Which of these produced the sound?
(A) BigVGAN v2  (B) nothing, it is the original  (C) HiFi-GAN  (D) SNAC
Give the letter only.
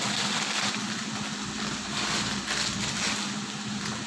A